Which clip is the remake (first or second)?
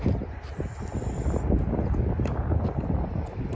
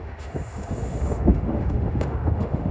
second